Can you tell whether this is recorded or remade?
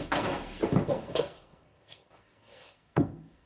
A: remade